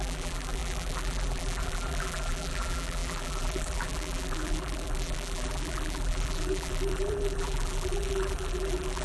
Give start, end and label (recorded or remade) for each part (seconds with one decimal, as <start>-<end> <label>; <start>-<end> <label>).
0.0-9.0 remade